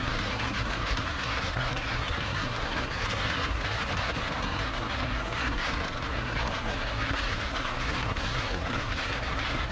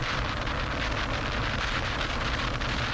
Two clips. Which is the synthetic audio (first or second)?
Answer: first